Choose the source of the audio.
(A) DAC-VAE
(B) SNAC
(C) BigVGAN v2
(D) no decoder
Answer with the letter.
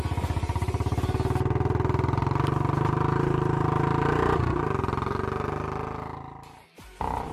D